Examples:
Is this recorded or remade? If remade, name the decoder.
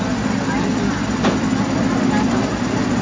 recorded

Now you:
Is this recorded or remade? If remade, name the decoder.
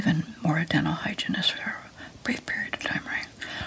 recorded